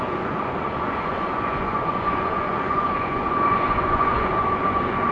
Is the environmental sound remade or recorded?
remade